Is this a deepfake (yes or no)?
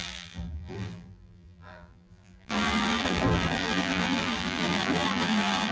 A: yes